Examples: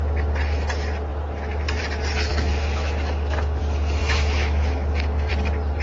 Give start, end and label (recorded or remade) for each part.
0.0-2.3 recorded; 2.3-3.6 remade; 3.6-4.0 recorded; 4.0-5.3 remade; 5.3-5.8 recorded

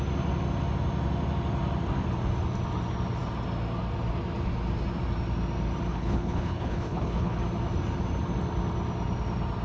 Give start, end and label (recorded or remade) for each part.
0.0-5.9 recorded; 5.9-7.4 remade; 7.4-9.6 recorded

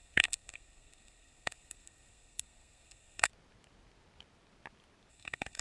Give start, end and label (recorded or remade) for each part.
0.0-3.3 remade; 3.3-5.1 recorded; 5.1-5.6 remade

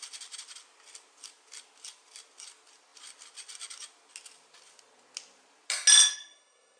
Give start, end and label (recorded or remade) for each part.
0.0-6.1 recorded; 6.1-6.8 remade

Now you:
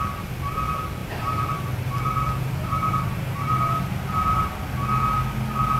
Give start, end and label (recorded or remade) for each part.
0.0-1.0 recorded; 1.0-4.5 remade; 4.5-5.8 recorded